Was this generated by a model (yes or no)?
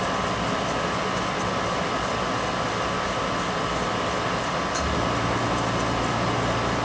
no